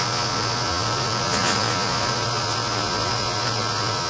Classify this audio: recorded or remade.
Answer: remade